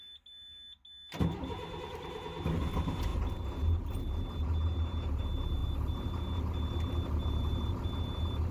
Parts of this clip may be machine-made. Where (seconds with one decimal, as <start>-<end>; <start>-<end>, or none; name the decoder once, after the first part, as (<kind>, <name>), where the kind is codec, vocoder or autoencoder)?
none